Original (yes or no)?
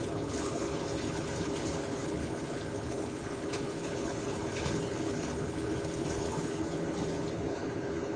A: no